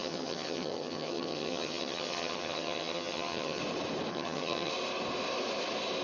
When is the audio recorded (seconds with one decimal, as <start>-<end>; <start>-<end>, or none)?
3.6-4.1; 4.7-6.0